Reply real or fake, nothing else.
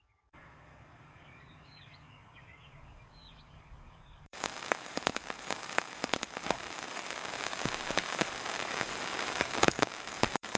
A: fake